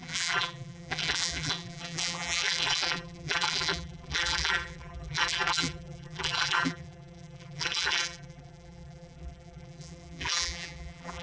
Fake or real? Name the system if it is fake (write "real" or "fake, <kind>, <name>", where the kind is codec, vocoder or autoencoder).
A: fake, vocoder, BigVGAN v2